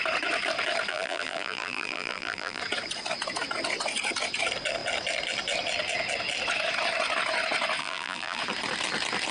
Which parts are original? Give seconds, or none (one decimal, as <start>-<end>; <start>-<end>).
0.0-0.9; 2.6-7.8; 8.4-9.3